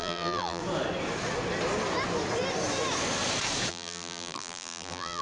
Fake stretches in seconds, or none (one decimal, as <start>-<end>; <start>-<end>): 0.0-0.6; 3.7-5.2